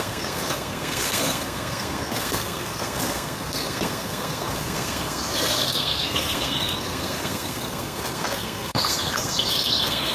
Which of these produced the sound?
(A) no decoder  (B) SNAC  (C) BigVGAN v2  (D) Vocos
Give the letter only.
B